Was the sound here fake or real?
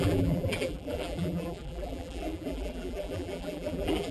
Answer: fake